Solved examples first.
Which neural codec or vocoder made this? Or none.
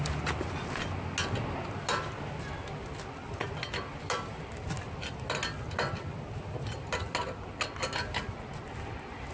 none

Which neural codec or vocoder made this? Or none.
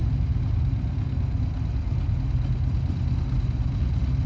none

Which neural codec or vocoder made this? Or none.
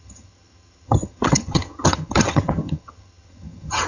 vocoder, HiFi-GAN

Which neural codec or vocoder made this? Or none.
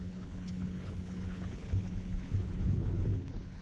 codec, HILCodec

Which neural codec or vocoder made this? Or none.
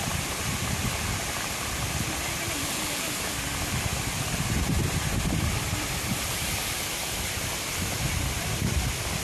vocoder, BigVGAN v2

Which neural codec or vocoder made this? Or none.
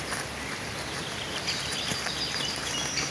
none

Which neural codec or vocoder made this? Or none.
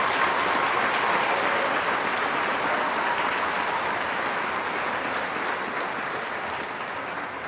none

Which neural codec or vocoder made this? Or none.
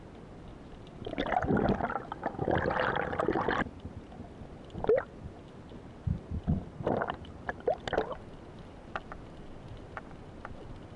none